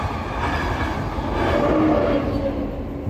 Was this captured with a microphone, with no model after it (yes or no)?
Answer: yes